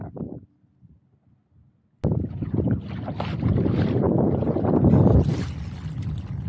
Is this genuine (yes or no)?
yes